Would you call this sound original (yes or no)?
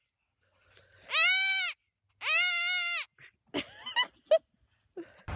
yes